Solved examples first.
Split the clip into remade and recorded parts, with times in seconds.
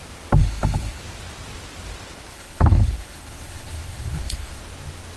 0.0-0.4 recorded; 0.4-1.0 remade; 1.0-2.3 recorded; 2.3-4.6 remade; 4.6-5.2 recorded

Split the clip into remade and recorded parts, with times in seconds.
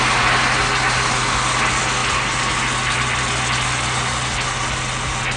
0.0-5.4 recorded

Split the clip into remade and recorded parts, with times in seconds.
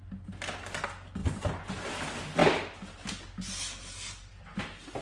0.0-5.0 recorded